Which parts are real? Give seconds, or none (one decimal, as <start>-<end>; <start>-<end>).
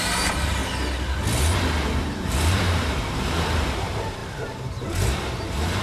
0.6-2.0